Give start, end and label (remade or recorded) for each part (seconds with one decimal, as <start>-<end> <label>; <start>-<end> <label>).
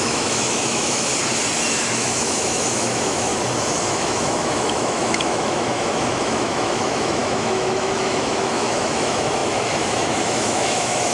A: 0.0-1.1 remade; 1.1-1.9 recorded; 1.9-3.3 remade; 3.3-3.9 recorded; 3.9-11.1 remade